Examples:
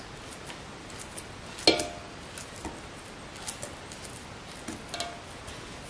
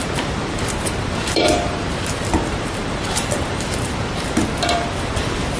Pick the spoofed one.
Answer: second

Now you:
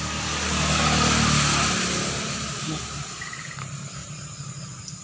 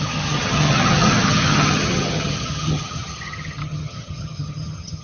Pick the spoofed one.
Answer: second